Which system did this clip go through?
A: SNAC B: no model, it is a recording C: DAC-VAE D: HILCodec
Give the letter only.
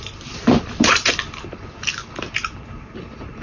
B